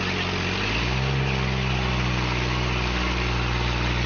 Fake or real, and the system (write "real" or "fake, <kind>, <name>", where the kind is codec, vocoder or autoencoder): real